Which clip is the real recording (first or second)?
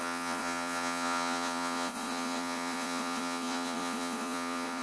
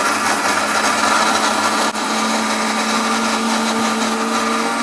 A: second